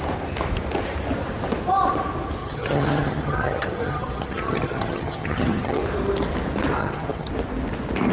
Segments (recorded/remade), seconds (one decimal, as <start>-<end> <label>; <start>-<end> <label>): 0.0-2.4 recorded; 2.4-5.8 remade; 5.8-6.8 recorded; 6.8-7.3 remade; 7.3-8.1 recorded